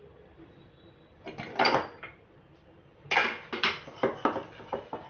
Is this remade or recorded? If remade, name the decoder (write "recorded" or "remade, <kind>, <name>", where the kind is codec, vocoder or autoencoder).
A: recorded